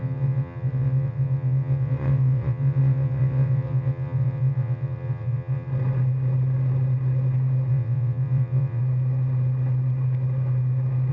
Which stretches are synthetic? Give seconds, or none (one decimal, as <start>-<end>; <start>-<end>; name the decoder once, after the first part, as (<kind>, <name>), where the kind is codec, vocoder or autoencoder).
0.0-5.7 (vocoder, WaveNeXt); 7.7-8.8